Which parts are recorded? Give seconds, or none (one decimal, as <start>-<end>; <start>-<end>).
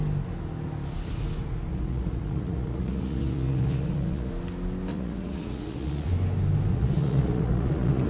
0.0-1.7; 4.3-4.9; 6.1-6.7